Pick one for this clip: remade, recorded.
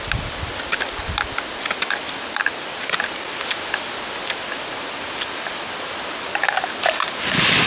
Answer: recorded